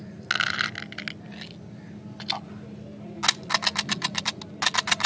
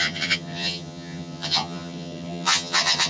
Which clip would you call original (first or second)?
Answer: first